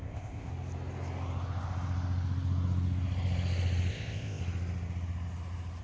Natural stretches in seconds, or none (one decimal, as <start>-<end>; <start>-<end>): 0.5-3.9; 4.4-5.8